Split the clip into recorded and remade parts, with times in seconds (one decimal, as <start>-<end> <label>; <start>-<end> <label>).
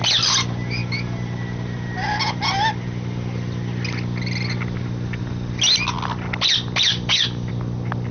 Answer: 0.0-6.9 recorded; 6.9-7.5 remade; 7.5-8.1 recorded